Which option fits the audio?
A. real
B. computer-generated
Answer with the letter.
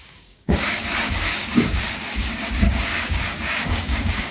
B